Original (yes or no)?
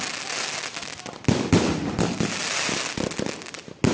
yes